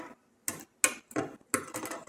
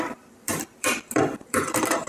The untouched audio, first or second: first